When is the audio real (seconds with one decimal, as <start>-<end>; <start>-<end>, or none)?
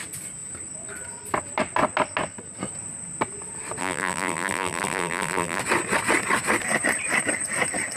0.0-3.8; 5.6-8.0